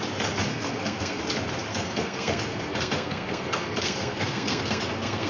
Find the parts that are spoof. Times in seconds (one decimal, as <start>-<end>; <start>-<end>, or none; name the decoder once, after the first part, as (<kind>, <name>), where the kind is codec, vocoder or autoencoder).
0.5-1.2 (codec, SNAC); 1.7-5.3